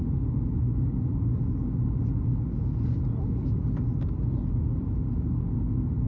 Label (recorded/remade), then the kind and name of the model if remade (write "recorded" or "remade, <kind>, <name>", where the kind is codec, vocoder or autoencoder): recorded